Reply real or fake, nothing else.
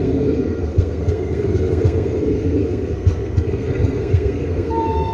fake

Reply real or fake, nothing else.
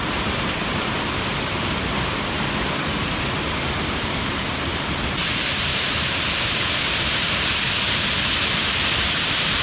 real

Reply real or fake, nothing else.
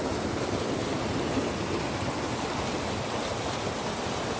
real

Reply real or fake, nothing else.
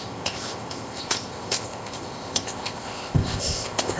fake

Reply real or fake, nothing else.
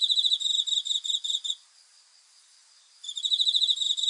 real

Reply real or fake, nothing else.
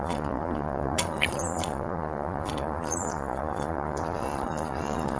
fake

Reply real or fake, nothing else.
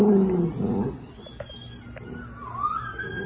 real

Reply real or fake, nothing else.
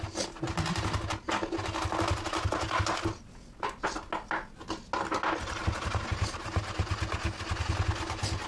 real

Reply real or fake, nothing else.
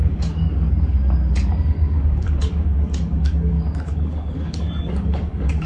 fake